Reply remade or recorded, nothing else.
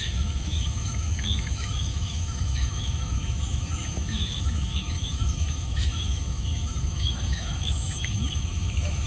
remade